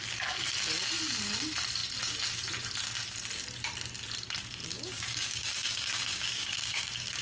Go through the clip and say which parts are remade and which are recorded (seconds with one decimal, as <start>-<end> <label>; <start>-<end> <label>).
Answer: 0.0-4.6 recorded; 4.6-7.2 remade